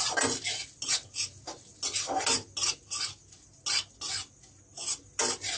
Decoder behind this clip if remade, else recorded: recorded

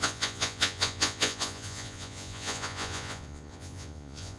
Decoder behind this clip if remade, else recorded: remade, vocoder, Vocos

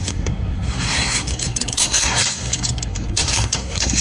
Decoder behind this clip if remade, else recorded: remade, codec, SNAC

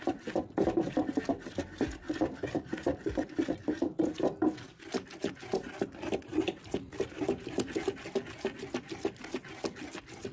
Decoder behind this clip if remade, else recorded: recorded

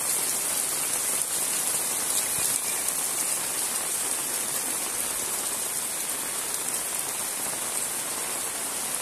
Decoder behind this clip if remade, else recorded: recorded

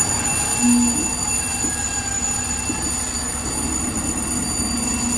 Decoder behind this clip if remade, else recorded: recorded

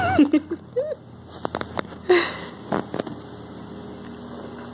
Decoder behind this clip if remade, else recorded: recorded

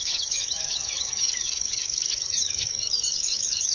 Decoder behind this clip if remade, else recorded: remade, autoencoder, DAC-VAE